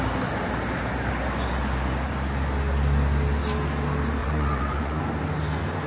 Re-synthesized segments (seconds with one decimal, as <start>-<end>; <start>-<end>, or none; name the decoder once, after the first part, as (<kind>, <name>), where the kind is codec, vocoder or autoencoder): 4.2-5.0 (vocoder, Vocos)